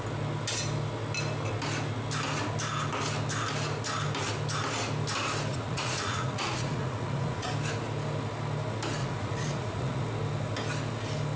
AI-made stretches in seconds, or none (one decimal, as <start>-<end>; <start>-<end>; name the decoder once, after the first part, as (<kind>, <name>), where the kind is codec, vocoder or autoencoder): 5.5-7.5 (vocoder, Vocos); 9.0-10.0